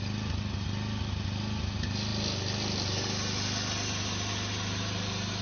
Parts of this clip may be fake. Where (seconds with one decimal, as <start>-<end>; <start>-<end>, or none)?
none